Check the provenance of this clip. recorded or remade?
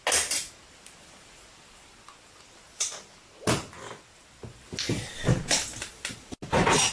recorded